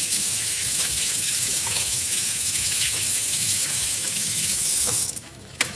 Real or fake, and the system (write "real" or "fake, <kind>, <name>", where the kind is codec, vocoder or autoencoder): fake, autoencoder, DAC-VAE